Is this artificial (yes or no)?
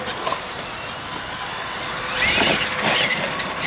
no